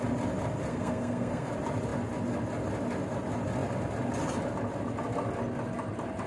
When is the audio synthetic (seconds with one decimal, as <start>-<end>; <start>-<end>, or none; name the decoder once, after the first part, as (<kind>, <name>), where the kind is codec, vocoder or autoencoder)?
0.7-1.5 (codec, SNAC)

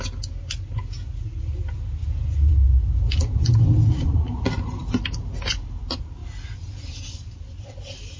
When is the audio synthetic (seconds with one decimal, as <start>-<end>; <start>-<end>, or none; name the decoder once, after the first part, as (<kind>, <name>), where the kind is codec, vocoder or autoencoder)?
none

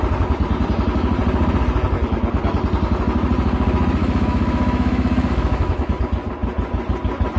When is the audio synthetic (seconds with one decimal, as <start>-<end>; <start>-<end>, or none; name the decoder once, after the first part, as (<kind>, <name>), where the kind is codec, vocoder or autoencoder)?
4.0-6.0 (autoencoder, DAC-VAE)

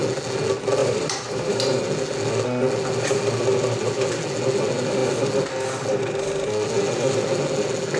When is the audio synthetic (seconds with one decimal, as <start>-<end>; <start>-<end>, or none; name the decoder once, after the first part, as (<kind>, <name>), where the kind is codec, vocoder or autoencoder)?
0.8-1.8 (vocoder, BigVGAN v2)

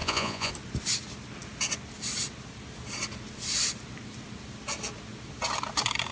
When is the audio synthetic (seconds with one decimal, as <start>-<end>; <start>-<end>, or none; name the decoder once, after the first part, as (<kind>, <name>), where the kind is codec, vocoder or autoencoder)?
0.0-0.5 (vocoder, Vocos)

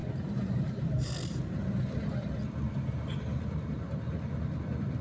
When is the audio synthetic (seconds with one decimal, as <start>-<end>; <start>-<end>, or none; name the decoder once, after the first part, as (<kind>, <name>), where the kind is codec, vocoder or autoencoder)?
0.0-1.1 (vocoder, BigVGAN v2)

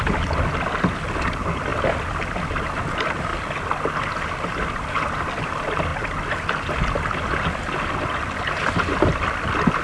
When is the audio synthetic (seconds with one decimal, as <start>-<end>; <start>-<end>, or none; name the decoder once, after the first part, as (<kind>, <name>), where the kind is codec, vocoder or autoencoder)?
none